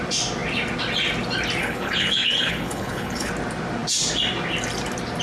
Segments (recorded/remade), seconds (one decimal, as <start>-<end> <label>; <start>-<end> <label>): 0.0-1.6 recorded; 1.6-3.3 remade; 3.3-5.2 recorded